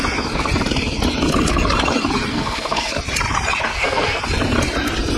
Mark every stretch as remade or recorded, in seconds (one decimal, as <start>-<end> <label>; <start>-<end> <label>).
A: 0.0-2.3 recorded; 2.3-2.9 remade; 2.9-3.7 recorded; 3.7-4.2 remade; 4.2-5.2 recorded